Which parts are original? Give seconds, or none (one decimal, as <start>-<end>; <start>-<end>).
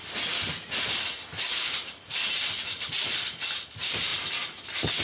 0.0-5.0